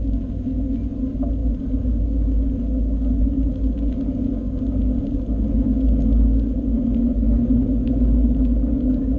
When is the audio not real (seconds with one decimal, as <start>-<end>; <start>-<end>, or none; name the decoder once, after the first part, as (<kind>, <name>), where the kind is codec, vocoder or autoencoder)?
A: none